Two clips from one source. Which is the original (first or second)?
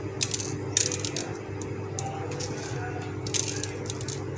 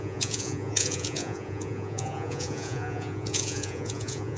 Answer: first